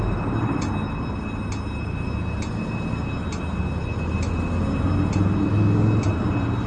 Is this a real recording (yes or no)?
yes